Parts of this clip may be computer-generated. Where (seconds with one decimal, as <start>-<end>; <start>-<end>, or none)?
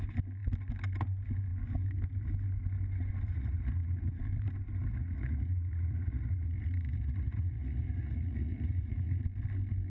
3.3-4.2; 4.9-9.2